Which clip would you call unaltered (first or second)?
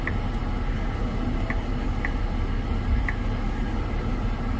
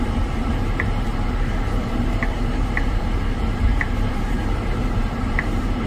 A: first